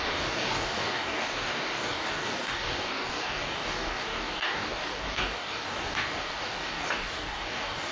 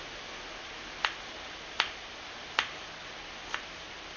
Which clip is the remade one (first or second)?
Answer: first